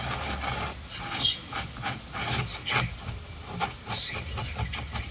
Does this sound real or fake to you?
real